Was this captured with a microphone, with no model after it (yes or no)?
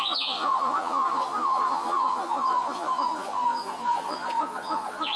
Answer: no